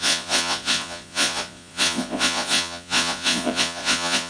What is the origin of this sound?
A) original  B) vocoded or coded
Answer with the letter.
B